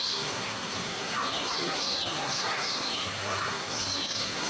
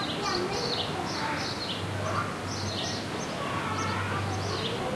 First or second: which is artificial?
first